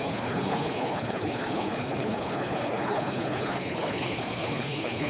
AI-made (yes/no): yes